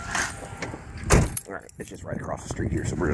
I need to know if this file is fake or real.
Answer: real